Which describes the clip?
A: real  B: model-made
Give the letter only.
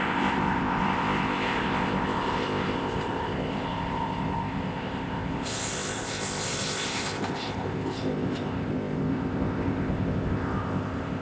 B